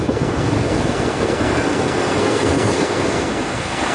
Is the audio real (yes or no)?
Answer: no